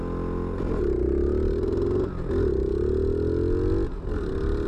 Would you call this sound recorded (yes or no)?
yes